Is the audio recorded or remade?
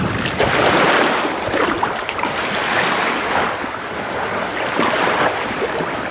recorded